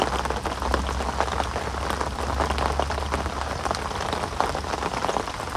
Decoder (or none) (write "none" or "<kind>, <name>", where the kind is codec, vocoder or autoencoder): none